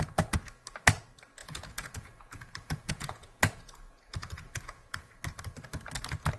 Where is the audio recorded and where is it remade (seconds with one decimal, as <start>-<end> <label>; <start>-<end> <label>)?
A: 0.0-1.4 recorded; 1.4-5.2 remade; 5.2-6.4 recorded